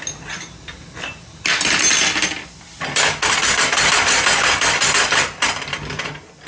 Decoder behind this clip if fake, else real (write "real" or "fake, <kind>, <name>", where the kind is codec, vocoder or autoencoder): real